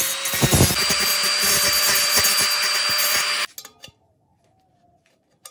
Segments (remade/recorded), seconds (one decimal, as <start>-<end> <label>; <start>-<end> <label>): 0.0-0.8 recorded; 0.8-3.2 remade; 3.2-5.5 recorded